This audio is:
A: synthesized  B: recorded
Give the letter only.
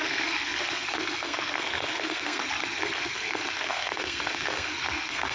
A